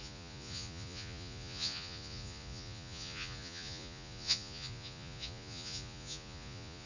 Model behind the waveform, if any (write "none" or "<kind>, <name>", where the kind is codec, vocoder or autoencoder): vocoder, Vocos